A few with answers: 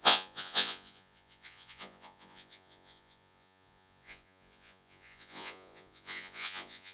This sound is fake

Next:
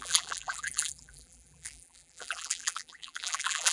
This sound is fake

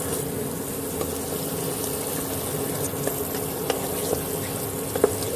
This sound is real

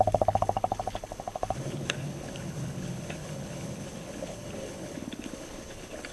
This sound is fake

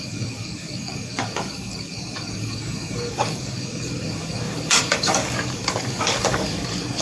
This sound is fake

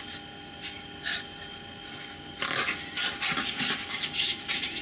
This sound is real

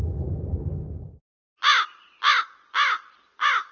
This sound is real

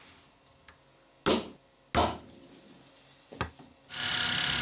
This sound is real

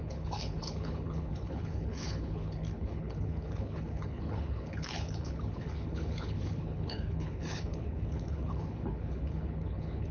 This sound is fake